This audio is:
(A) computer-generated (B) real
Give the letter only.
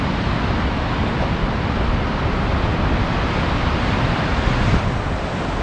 B